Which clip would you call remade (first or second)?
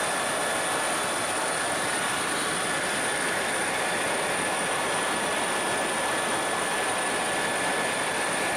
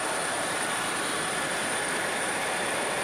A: second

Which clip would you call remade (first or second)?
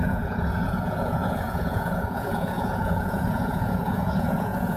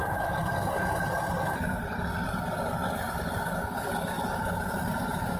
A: first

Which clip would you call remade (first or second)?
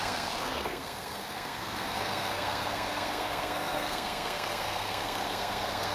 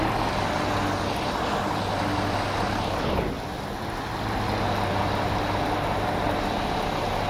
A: first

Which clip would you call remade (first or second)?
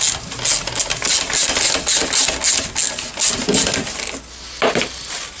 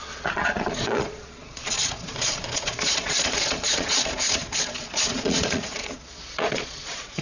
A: second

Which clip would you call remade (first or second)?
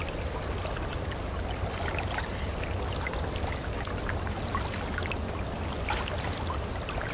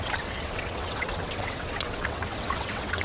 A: second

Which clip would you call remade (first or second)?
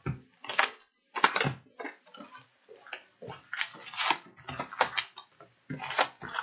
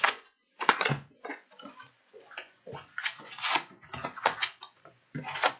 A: second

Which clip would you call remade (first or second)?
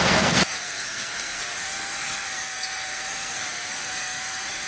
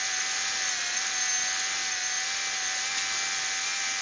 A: first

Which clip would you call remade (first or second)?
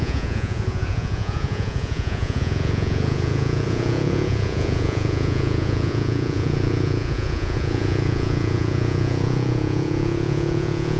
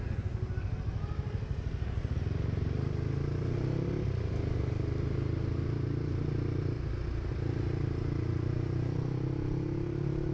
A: first